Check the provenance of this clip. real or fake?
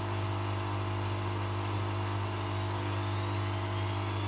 real